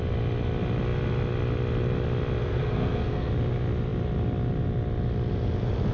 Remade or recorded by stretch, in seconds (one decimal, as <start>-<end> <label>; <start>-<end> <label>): 0.0-2.4 recorded; 2.4-3.3 remade; 3.3-5.9 recorded